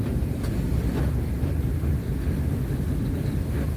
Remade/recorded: recorded